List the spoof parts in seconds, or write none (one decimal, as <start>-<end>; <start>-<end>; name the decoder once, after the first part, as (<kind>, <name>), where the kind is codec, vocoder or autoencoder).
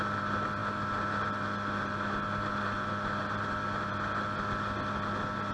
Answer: none